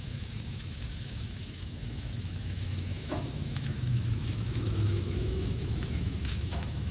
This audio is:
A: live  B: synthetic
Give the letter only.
B